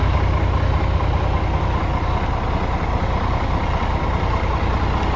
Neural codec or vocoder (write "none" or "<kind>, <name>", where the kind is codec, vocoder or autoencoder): none